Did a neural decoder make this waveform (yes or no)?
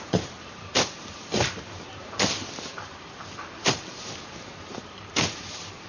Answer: yes